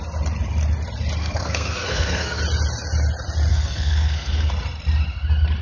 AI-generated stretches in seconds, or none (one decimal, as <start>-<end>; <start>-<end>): 1.2-2.4; 3.5-4.5